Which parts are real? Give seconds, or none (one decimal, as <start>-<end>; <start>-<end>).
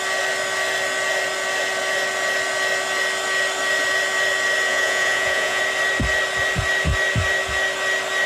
0.0-4.7; 5.6-8.3